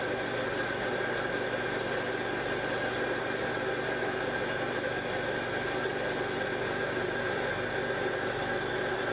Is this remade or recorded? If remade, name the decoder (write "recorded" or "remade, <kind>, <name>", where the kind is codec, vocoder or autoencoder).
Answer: recorded